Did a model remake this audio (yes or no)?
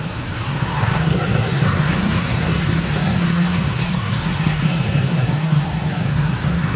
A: yes